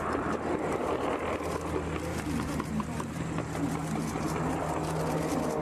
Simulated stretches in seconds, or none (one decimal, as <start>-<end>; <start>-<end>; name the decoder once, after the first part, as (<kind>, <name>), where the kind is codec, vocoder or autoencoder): 2.1-3.5 (vocoder, BigVGAN v2)

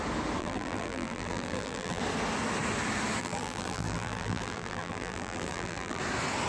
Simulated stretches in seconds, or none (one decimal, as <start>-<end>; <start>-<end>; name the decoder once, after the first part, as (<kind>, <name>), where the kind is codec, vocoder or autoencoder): 0.4-2.0 (vocoder, BigVGAN v2); 3.2-6.0

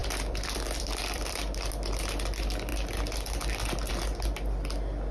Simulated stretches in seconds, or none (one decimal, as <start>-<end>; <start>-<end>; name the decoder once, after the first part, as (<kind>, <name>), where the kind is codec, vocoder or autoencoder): 0.0-1.7 (vocoder, BigVGAN v2)

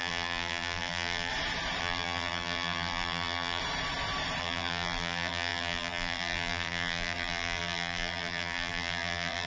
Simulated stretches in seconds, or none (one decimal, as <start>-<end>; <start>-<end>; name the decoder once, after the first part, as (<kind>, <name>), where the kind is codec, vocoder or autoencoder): 0.0-1.3 (vocoder, BigVGAN v2); 1.8-3.6; 4.4-9.5

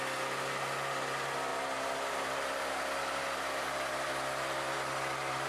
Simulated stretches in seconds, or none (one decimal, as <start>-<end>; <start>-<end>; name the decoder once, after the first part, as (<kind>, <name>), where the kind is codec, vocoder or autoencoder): none

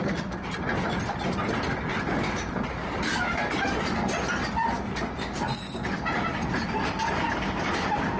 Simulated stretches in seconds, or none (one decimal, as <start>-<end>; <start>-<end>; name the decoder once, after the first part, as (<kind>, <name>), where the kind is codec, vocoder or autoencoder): 0.0-1.9 (vocoder, BigVGAN v2); 6.8-8.2

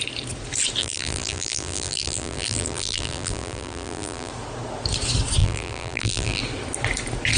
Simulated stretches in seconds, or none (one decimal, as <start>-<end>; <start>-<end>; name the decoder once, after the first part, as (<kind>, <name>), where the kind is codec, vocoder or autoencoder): 0.8-4.3 (vocoder, BigVGAN v2); 5.4-6.4

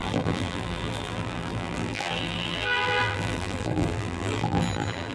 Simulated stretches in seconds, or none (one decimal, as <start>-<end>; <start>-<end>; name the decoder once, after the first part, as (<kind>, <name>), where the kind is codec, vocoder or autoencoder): 0.0-5.1 (vocoder, BigVGAN v2)